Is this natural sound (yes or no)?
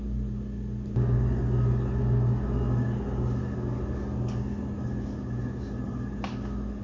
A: yes